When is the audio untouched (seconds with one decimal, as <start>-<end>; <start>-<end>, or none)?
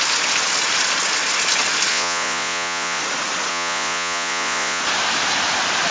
0.0-1.9; 3.0-3.5; 4.8-5.9